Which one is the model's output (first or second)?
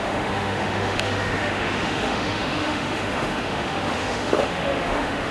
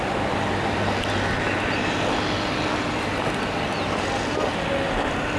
first